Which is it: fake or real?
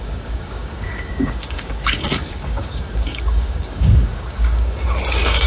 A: fake